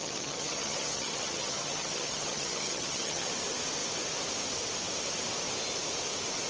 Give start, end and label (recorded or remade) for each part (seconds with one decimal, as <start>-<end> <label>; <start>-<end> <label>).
0.0-3.3 remade; 3.3-6.5 recorded